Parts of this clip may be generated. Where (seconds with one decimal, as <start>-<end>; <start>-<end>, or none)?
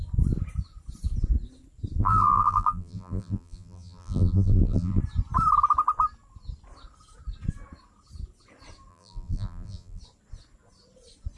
2.0-5.0; 8.9-10.0